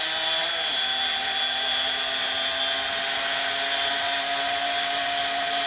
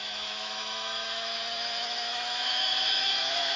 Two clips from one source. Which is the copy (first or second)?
second